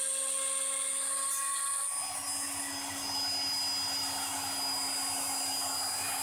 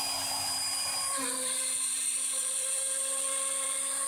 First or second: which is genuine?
first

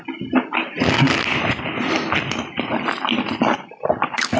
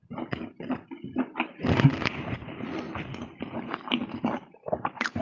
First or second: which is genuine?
first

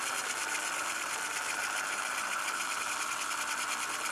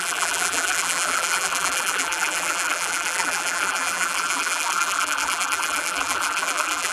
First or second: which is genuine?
first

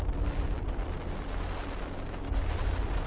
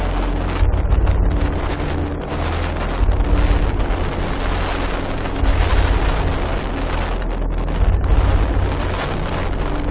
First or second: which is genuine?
second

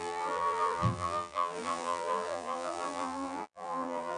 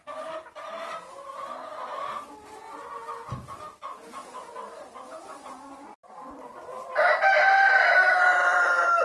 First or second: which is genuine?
second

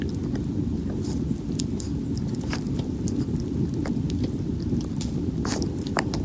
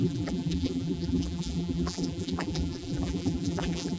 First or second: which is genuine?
first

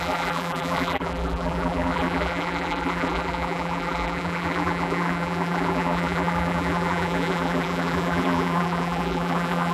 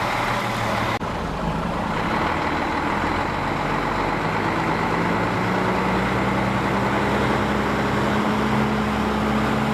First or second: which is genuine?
second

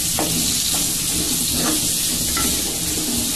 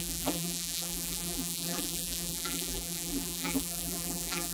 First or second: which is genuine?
first